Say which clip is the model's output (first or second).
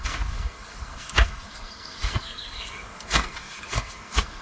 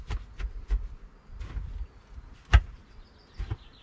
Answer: first